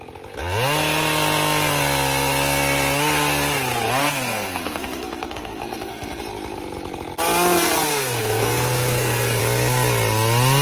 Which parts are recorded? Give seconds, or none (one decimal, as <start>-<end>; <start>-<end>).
0.0-4.0; 6.2-7.9; 9.4-10.6